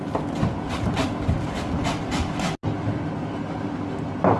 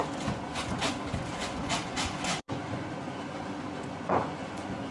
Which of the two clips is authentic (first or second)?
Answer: first